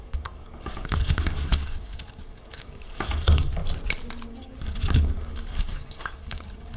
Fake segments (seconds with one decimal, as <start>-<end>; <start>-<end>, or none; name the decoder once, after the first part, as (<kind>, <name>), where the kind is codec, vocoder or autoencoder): 0.0-3.6 (codec, DAC); 4.3-6.8